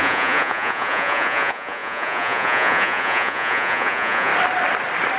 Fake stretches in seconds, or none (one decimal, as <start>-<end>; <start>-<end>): 0.0-4.3